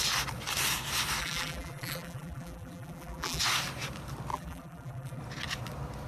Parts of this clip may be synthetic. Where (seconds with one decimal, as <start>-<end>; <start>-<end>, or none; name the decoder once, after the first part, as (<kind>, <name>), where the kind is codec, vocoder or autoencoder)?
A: 1.2-3.4 (vocoder, BigVGAN v2); 4.3-5.2